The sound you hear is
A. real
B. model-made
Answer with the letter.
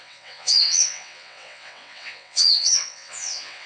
B